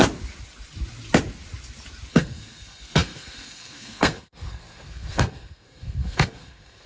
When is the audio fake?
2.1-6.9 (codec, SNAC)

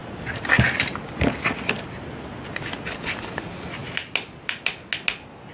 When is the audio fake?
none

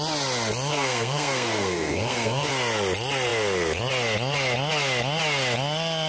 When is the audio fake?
0.7-2.5 (codec, SNAC)